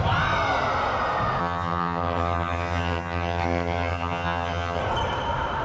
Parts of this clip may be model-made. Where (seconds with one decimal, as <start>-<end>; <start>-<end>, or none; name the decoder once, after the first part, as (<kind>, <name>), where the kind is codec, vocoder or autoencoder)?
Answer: 1.4-4.8 (vocoder, HiFi-GAN)